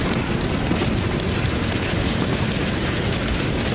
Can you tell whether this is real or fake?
fake